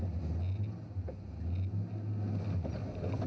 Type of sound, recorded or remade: recorded